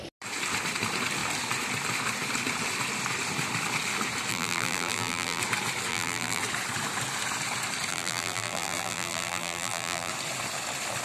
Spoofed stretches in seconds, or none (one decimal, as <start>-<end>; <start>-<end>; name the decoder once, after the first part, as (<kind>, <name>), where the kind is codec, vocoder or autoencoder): 4.3-5.4 (vocoder, BigVGAN v2); 5.9-6.4; 7.9-10.1